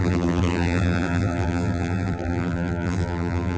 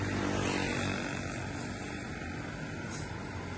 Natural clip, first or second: second